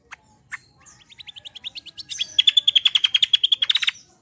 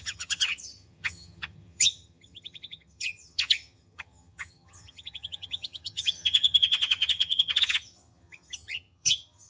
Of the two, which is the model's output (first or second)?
second